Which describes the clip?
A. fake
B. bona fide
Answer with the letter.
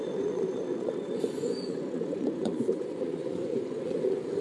A